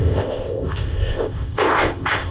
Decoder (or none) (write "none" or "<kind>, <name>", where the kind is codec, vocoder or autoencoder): codec, ZipCodec